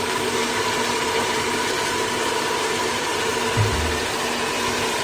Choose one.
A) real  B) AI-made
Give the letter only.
B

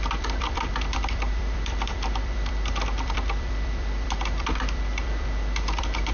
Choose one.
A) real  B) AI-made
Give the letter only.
B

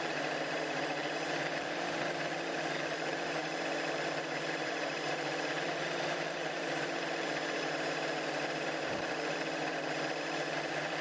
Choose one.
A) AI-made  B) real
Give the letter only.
A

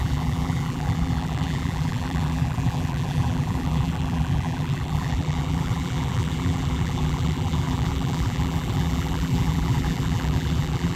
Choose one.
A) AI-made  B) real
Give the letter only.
A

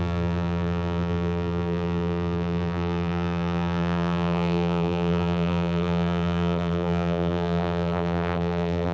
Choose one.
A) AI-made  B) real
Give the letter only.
A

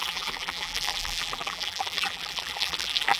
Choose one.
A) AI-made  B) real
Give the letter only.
A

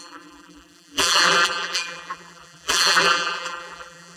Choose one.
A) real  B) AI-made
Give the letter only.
B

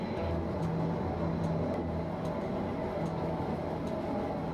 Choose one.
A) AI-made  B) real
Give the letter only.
B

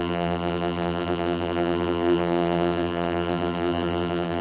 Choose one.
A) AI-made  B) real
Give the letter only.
A